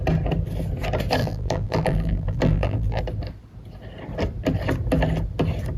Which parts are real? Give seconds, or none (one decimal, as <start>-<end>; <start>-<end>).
0.0-1.2; 3.0-5.8